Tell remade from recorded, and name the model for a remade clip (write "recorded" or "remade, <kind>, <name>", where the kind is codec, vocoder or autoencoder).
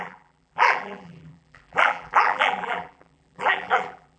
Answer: remade, vocoder, BigVGAN v2